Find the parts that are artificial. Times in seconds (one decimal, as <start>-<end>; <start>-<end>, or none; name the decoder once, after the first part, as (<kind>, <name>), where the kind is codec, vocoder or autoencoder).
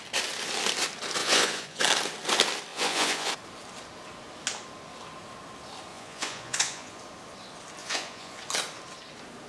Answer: 1.2-1.8 (vocoder, Vocos); 2.7-3.3; 5.9-7.0; 7.8-8.4